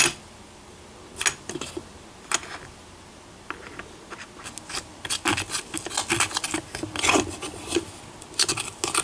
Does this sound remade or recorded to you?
recorded